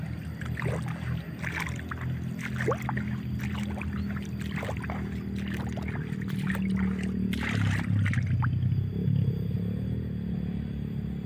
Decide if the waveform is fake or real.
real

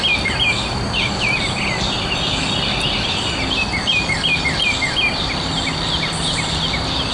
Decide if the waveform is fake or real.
real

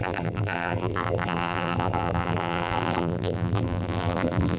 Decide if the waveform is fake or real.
fake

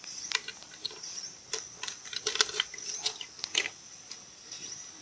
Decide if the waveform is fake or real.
real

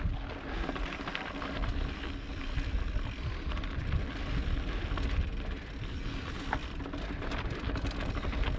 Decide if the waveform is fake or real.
real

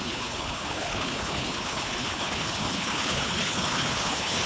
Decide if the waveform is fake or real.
fake